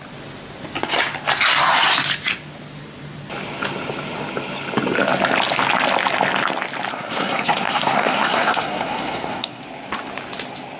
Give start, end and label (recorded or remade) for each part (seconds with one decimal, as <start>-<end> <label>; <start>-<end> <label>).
0.0-6.9 recorded; 6.9-9.6 remade; 9.6-10.8 recorded